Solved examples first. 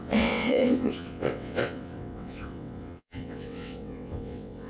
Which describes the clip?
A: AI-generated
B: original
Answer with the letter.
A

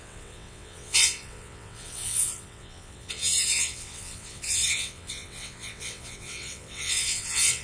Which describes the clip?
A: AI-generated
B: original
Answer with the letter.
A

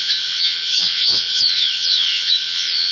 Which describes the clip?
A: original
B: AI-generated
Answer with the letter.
B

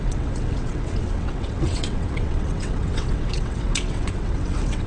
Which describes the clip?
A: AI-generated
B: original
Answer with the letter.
A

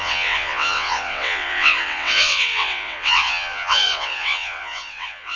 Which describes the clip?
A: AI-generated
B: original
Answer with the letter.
A